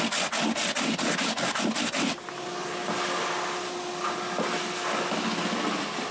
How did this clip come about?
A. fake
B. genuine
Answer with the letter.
B